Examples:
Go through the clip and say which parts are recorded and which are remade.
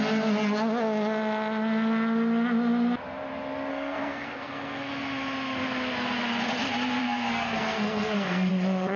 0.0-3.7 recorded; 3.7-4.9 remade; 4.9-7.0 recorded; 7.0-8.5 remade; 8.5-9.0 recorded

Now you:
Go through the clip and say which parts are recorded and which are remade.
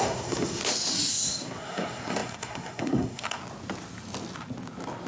0.0-0.6 remade; 0.6-1.1 recorded; 1.1-3.4 remade; 3.4-5.1 recorded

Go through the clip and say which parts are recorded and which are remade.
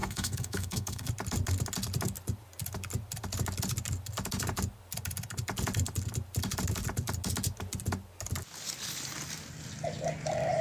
0.0-1.1 remade; 1.1-10.6 recorded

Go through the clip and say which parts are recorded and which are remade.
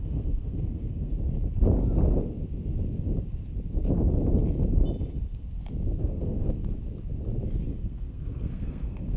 0.0-1.1 remade; 1.1-6.0 recorded; 6.0-6.6 remade; 6.6-7.7 recorded; 7.7-9.2 remade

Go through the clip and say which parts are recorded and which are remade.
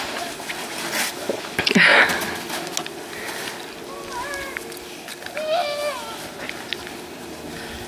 0.0-7.9 recorded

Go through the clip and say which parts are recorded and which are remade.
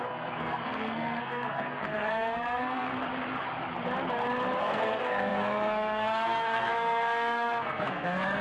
0.0-2.9 remade; 2.9-4.6 recorded; 4.6-8.4 remade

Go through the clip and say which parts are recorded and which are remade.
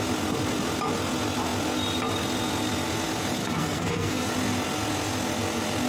0.0-3.4 recorded; 3.4-4.3 remade; 4.3-5.9 recorded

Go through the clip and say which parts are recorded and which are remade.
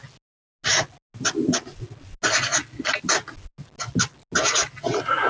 0.0-5.3 recorded